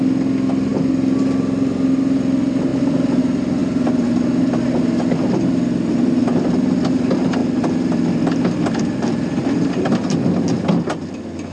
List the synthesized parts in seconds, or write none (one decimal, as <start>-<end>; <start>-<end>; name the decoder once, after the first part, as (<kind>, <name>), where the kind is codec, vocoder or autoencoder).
3.6-4.2 (vocoder, BigVGAN v2); 7.4-8.8